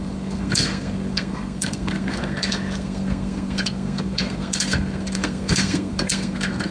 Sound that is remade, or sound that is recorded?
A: remade